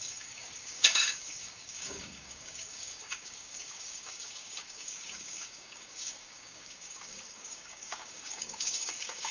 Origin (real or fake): fake